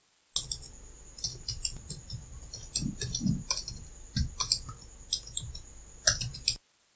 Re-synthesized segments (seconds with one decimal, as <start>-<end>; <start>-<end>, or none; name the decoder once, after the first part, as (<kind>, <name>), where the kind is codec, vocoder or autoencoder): none